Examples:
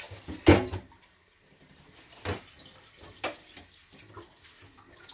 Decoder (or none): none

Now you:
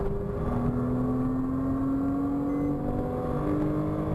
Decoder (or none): none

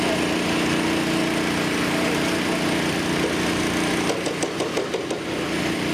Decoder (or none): none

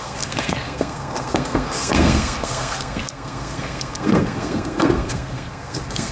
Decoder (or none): codec, SNAC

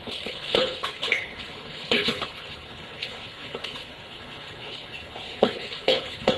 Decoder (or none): codec, HILCodec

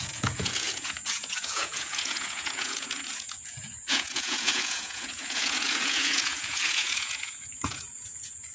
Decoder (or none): vocoder, Vocos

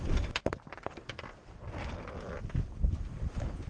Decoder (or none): none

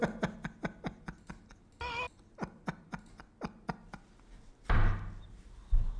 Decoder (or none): none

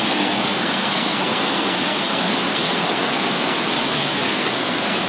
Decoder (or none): codec, SNAC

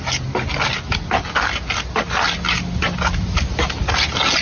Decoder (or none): none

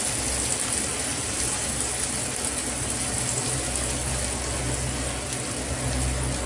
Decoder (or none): none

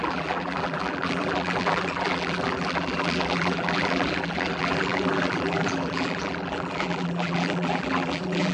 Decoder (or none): vocoder, BigVGAN v2